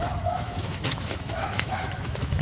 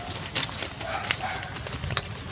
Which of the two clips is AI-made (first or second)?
first